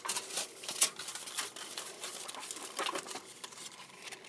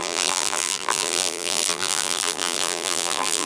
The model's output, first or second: second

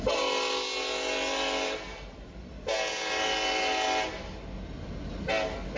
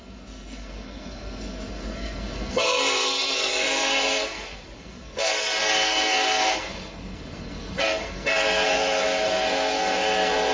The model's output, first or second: second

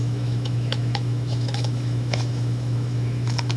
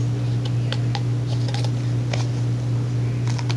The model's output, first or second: first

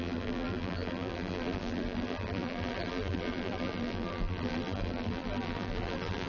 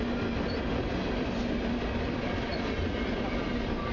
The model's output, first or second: first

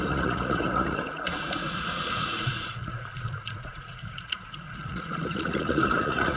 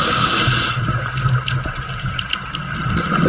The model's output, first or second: first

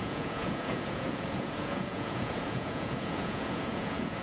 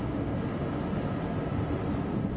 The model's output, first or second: first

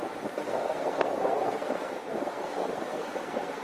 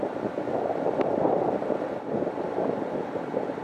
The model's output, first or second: first